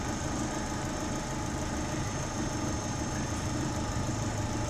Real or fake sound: real